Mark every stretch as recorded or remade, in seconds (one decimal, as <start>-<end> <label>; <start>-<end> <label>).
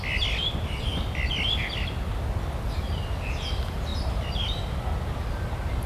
0.0-5.9 recorded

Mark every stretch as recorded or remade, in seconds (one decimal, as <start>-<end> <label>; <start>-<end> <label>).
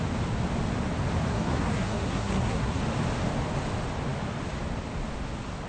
0.0-1.3 recorded; 1.3-2.8 remade; 2.8-5.7 recorded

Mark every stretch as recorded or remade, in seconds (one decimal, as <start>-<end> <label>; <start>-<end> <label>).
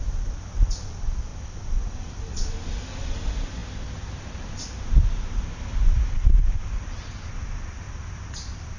0.0-8.8 recorded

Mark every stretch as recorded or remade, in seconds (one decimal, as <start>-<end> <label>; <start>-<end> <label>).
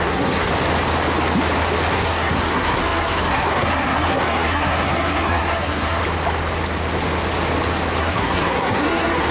0.0-0.5 remade; 0.5-1.9 recorded; 1.9-6.0 remade; 6.0-8.0 recorded; 8.0-9.3 remade